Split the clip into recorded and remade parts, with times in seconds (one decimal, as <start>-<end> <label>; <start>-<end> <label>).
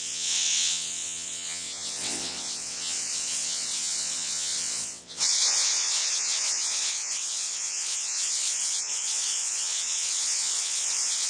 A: 0.0-11.3 remade